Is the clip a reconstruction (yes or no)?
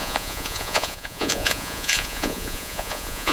yes